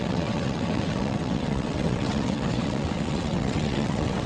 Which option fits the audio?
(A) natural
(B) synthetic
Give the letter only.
B